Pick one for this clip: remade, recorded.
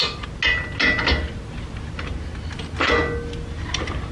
recorded